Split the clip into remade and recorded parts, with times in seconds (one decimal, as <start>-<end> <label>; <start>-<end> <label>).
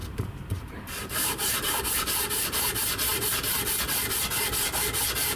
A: 0.0-1.8 remade; 1.8-5.4 recorded